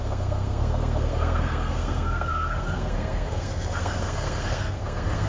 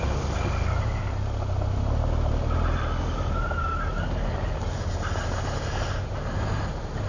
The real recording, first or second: second